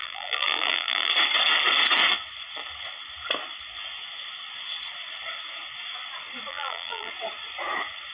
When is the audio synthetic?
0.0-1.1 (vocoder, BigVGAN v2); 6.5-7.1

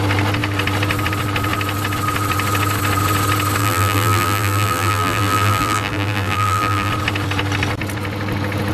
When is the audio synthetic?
3.6-6.9 (vocoder, BigVGAN v2)

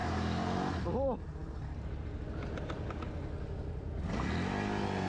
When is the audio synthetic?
0.0-0.7 (vocoder, BigVGAN v2)

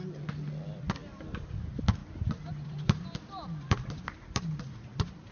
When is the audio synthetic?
1.0-1.6 (vocoder, BigVGAN v2); 2.0-5.3

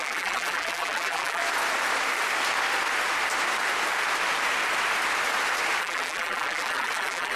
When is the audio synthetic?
0.0-1.4 (vocoder, BigVGAN v2); 5.8-7.4

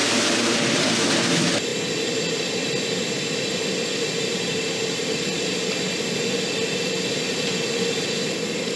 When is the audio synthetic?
0.0-0.9 (vocoder, BigVGAN v2); 1.7-5.7